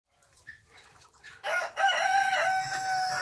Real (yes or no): no